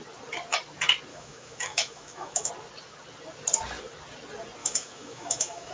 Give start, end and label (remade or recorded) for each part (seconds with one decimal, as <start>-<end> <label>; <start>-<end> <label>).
0.0-1.1 recorded; 1.1-2.5 remade; 2.5-4.6 recorded; 4.6-5.7 remade